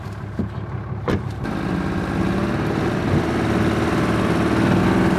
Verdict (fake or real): real